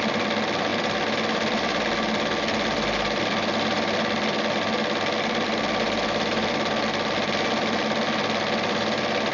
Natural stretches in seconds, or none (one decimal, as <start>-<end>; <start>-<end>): 0.0-9.3